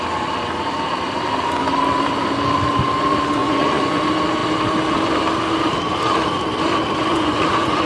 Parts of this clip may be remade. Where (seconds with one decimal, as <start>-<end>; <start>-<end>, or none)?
3.4-4.0; 7.1-7.9